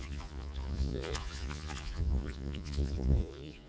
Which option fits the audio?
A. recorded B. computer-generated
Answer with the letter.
B